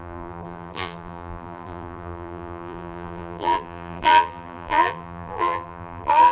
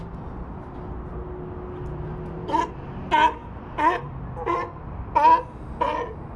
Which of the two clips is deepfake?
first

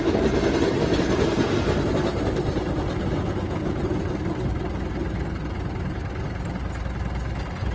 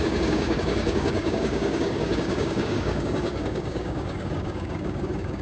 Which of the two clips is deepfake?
second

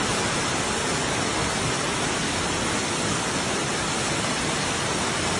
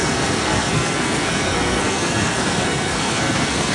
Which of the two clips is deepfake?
second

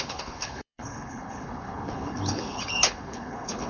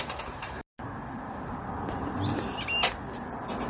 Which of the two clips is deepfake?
first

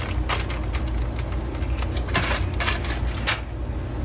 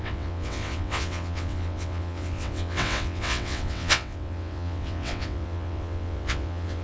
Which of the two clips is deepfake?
second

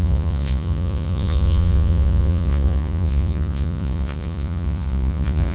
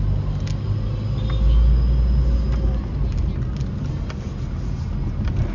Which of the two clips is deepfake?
first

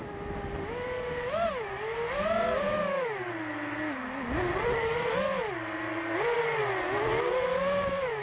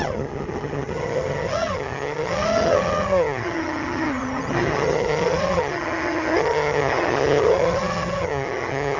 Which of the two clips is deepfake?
second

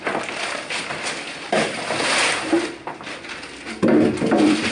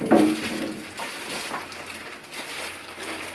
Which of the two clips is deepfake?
first